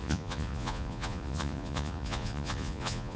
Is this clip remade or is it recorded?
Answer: remade